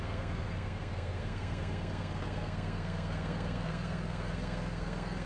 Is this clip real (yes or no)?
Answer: no